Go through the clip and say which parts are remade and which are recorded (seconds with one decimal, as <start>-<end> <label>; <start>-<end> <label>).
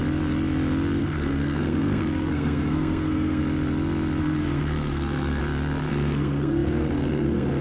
0.0-1.0 recorded; 1.0-3.4 remade; 3.4-4.2 recorded; 4.2-5.4 remade; 5.4-5.9 recorded; 5.9-7.6 remade